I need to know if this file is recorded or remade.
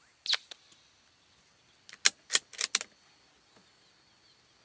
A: recorded